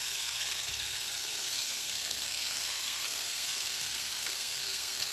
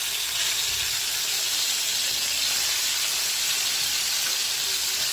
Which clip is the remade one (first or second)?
first